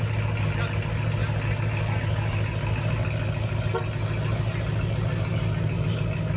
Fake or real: real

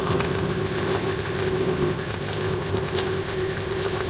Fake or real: fake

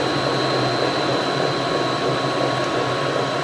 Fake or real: real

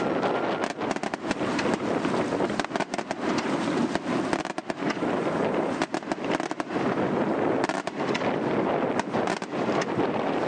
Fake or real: real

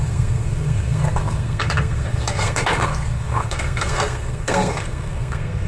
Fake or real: fake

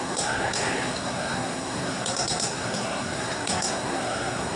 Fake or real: fake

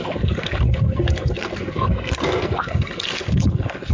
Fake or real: fake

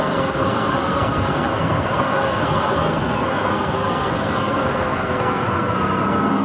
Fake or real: fake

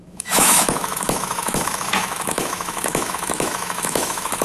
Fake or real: fake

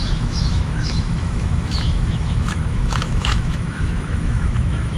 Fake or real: fake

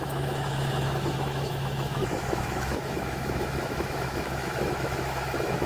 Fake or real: fake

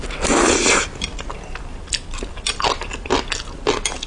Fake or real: real